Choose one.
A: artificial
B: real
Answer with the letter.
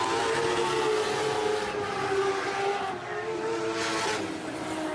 B